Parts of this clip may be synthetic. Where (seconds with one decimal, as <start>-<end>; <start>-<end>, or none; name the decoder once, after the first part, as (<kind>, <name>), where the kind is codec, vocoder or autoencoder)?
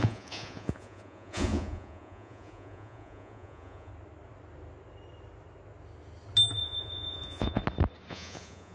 0.0-3.9 (vocoder, Vocos); 6.5-7.6; 8.1-8.7